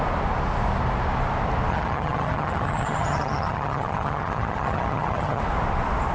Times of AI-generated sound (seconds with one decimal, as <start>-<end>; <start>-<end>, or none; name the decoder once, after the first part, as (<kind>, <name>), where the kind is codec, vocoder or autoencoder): 1.7-5.4 (vocoder, HiFi-GAN)